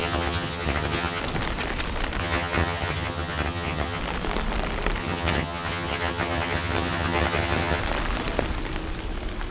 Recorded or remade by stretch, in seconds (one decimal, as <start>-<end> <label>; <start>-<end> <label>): 0.0-1.2 remade; 1.2-2.2 recorded; 2.2-4.0 remade; 4.0-5.0 recorded; 5.0-7.8 remade; 7.8-9.5 recorded